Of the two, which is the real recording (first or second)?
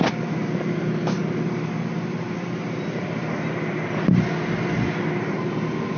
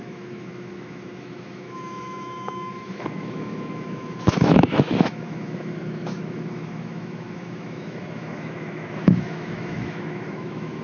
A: first